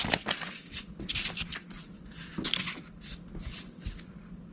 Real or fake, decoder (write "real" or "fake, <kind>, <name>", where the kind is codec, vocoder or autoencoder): real